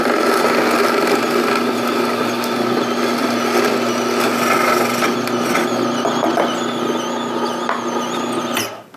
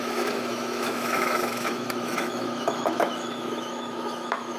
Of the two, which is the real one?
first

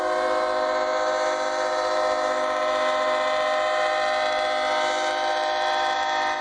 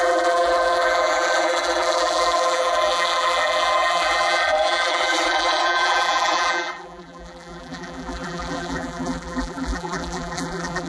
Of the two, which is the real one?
first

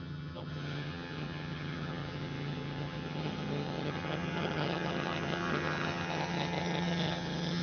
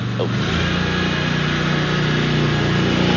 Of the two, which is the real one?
second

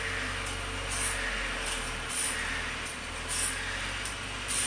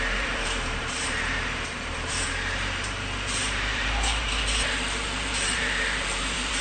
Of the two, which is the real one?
first